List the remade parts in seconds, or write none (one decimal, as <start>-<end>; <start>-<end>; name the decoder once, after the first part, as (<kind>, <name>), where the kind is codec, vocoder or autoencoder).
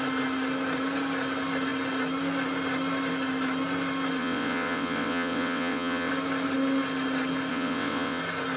4.2-6.1 (vocoder, WaveNeXt); 7.5-8.2